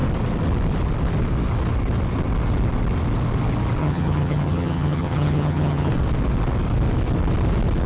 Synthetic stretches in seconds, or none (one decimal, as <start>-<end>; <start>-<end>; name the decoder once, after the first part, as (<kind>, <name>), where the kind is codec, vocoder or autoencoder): 3.8-5.9 (vocoder, HiFi-GAN)

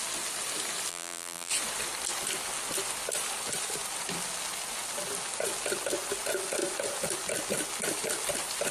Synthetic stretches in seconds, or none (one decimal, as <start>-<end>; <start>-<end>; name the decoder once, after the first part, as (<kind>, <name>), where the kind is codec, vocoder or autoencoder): 0.9-1.5 (vocoder, BigVGAN v2)

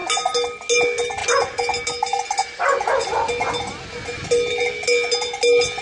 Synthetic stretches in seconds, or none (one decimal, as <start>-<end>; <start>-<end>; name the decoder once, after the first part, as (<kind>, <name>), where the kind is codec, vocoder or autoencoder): none

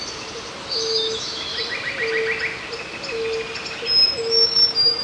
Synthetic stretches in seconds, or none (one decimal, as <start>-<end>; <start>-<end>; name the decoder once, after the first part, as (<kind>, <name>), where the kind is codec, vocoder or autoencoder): 0.6-1.5 (autoencoder, DAC-VAE); 4.2-5.0

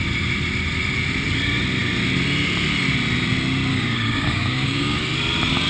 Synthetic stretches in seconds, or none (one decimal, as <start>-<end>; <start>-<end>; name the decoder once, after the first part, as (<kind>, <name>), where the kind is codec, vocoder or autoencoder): 3.7-5.0 (codec, DAC)